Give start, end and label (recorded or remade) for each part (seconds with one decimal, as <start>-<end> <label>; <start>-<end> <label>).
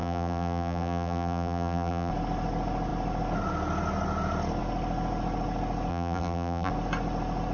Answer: 0.0-2.1 remade; 2.1-5.9 recorded; 5.9-6.7 remade; 6.7-7.5 recorded